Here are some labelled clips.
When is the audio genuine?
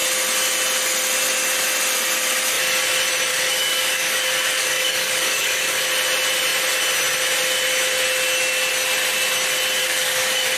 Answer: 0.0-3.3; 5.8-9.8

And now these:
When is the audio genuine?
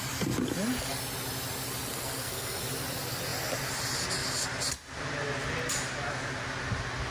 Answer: 0.0-1.9; 2.6-7.1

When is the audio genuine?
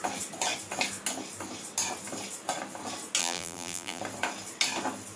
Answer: 0.0-3.2; 4.0-5.2